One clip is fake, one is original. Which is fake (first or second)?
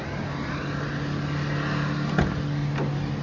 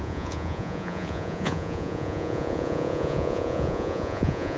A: second